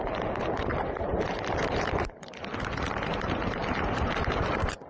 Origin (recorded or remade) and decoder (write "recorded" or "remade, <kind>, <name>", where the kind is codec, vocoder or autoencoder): remade, vocoder, BigVGAN v2